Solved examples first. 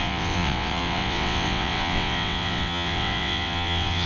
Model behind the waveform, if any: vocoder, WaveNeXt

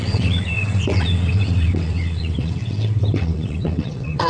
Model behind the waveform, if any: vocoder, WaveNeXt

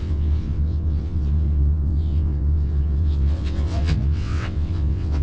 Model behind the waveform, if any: vocoder, WaveNeXt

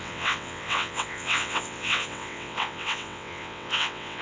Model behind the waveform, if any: vocoder, WaveNeXt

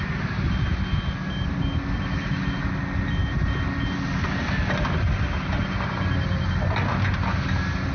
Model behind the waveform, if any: none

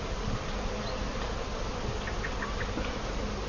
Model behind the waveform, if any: none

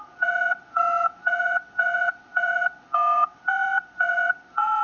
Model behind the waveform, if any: vocoder, WaveNeXt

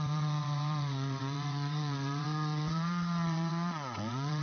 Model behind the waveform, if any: vocoder, WaveNeXt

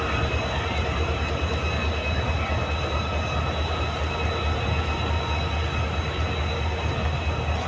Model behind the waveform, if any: none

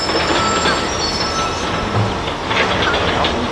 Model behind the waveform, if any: none